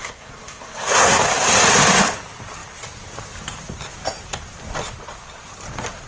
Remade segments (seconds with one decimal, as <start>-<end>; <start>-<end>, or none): 0.0-1.2